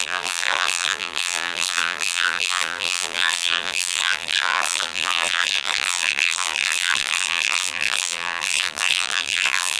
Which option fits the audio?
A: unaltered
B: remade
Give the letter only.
B